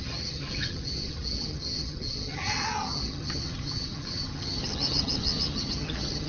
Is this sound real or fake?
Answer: fake